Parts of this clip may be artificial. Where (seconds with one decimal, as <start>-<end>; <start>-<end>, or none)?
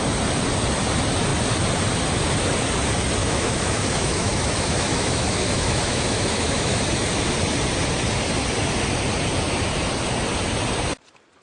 3.2-6.8